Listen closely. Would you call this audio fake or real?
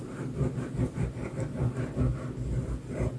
real